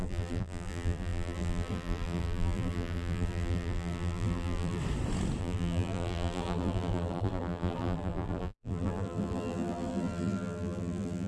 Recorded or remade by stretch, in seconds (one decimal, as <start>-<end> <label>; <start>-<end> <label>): 0.0-4.8 remade; 4.8-5.4 recorded; 5.4-11.3 remade